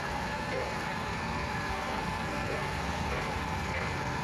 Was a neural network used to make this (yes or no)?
yes